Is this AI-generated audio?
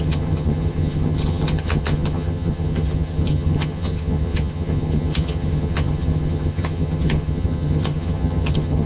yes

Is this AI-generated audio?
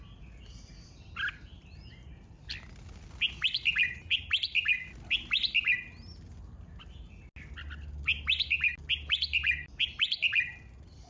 no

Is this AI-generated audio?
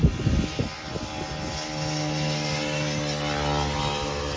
no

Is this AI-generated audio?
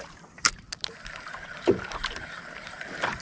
no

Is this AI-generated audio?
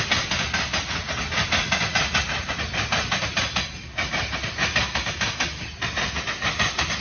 no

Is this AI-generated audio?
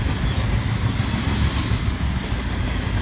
no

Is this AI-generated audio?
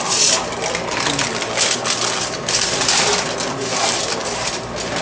no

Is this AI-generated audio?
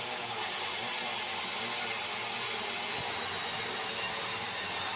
no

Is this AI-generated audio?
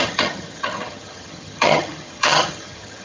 yes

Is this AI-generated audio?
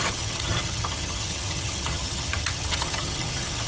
yes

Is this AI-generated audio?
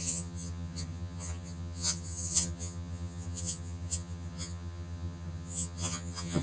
yes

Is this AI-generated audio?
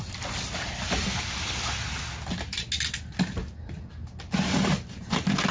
no